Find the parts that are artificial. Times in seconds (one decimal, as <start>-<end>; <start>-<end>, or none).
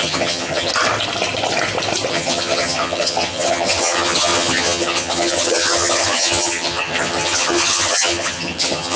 0.0-0.7; 2.1-9.0